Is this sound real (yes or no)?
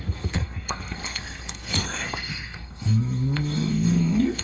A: no